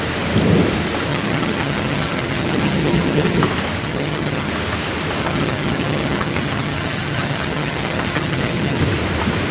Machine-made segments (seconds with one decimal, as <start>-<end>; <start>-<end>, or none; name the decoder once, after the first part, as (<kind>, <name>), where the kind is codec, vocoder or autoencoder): 1.1-3.4 (vocoder, HiFi-GAN); 3.8-4.5; 5.2-8.8